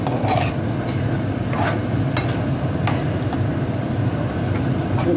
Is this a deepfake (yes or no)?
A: no